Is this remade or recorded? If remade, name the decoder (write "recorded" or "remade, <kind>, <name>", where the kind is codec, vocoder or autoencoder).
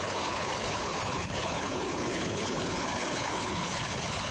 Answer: remade, codec, HILCodec